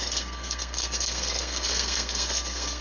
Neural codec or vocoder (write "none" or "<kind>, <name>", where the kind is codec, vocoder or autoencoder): codec, SNAC